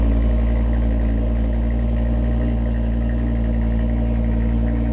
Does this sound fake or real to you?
real